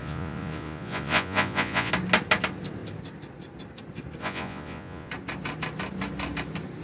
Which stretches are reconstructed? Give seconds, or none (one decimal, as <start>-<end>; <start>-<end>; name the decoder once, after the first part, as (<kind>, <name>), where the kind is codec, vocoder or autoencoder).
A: 0.0-1.9 (vocoder, Vocos); 4.2-5.1